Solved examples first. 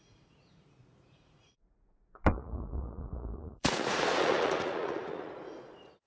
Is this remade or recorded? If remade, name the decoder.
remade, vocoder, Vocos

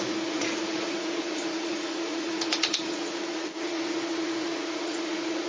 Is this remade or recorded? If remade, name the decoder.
remade, vocoder, Vocos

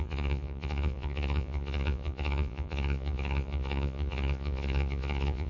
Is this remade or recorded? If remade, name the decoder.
remade, vocoder, Vocos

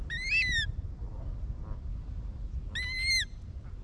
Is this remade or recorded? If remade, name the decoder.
recorded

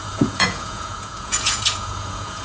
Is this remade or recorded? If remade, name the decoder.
remade, vocoder, Vocos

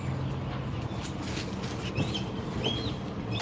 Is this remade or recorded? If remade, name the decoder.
recorded